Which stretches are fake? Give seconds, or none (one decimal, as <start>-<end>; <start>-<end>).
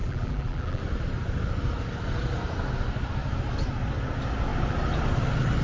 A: 0.0-0.8